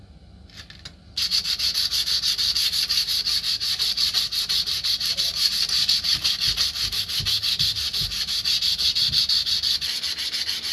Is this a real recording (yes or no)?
yes